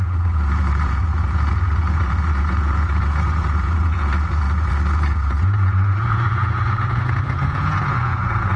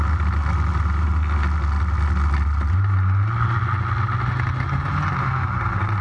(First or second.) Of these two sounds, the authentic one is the second